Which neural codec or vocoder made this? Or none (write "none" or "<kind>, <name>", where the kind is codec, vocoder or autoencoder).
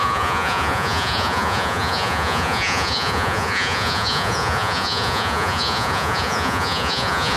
vocoder, Vocos